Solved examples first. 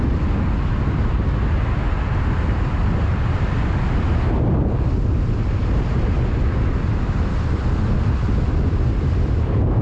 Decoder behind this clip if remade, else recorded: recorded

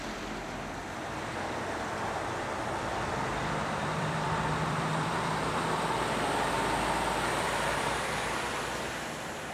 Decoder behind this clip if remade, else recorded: remade, vocoder, BigVGAN v2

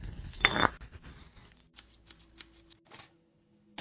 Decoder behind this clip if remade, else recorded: recorded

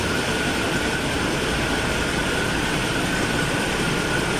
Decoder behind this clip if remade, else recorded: remade, vocoder, BigVGAN v2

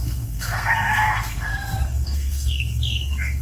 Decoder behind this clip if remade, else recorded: remade, codec, SNAC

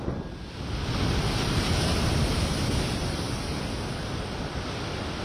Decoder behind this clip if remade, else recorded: recorded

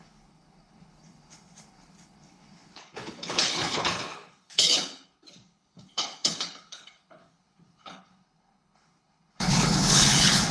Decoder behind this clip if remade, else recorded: remade, codec, HILCodec